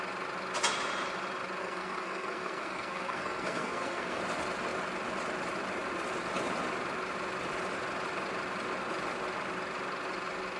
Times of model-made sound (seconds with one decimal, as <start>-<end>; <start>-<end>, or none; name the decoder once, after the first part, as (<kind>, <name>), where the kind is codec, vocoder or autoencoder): 1.6-4.2 (codec, SNAC)

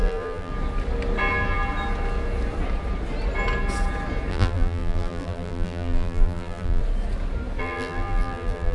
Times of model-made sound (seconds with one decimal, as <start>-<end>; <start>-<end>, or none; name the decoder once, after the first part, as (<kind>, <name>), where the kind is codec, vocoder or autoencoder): 0.0-0.5 (vocoder, BigVGAN v2); 4.3-6.8; 7.6-8.7